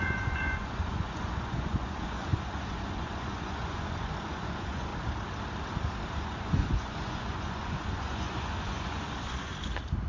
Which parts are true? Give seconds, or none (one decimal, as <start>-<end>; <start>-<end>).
4.9-6.1; 9.5-10.1